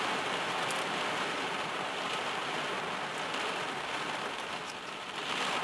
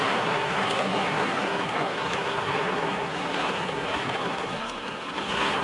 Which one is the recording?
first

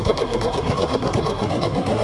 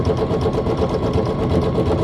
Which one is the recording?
second